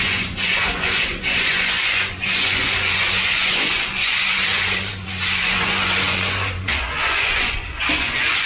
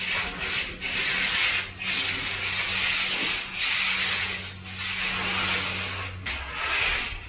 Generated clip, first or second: first